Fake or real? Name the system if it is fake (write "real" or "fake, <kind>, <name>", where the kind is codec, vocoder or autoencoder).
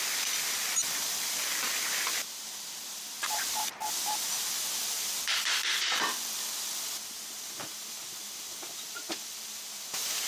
fake, vocoder, BigVGAN v2